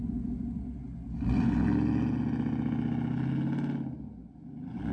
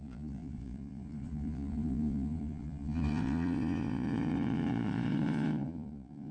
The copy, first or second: second